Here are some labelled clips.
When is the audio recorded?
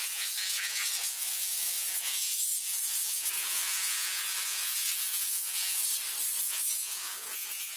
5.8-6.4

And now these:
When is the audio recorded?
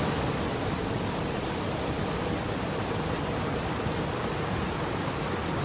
0.0-5.6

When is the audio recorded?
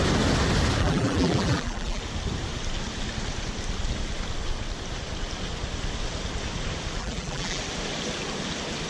0.0-0.8; 2.0-7.0; 7.6-8.9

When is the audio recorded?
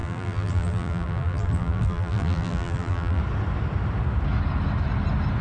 3.2-5.4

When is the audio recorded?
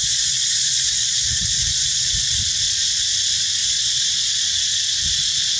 2.4-3.6; 4.3-5.6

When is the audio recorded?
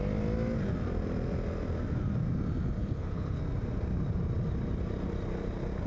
0.0-2.8; 3.4-5.9